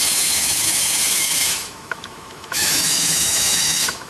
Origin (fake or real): fake